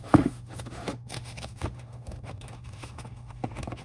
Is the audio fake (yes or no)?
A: yes